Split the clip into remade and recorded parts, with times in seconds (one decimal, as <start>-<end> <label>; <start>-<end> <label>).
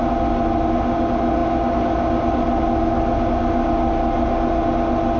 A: 0.0-5.2 recorded